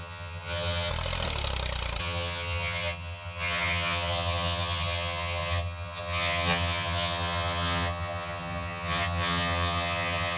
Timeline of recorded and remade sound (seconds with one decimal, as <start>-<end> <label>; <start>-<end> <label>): 0.0-0.9 remade; 0.9-2.0 recorded; 2.0-10.4 remade

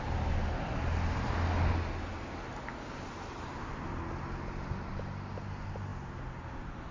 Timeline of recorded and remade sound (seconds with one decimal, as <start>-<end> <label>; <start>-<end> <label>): 0.0-6.9 recorded